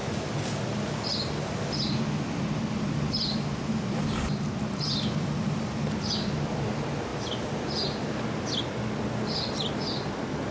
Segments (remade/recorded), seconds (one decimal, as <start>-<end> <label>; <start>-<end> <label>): 0.0-10.5 recorded